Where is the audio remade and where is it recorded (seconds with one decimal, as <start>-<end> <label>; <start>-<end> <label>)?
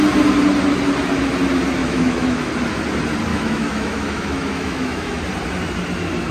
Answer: 0.0-1.8 recorded; 1.8-2.5 remade; 2.5-3.3 recorded; 3.3-5.2 remade; 5.2-6.3 recorded